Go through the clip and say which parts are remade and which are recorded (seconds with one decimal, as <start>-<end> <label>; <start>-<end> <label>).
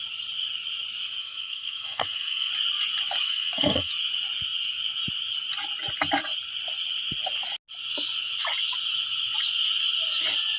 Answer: 0.0-1.2 recorded; 1.2-2.5 remade; 2.5-3.2 recorded; 3.2-3.9 remade; 3.9-10.6 recorded